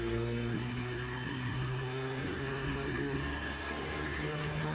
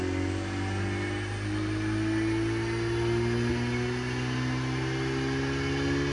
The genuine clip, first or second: second